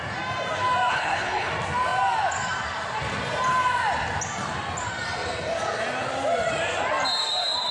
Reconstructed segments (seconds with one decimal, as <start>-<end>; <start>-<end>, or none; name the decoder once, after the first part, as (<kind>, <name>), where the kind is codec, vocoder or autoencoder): 0.9-1.5 (codec, HILCodec)